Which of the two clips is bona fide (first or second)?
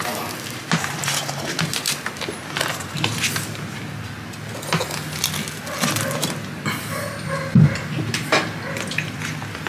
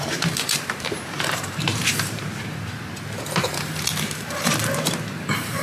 first